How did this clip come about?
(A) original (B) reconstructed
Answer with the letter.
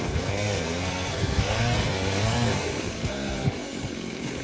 B